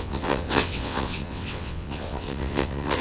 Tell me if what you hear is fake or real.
fake